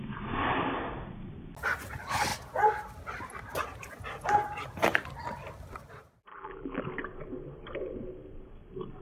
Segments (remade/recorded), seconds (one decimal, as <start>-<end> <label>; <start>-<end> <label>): 0.0-6.3 recorded; 6.3-6.8 remade; 6.8-9.0 recorded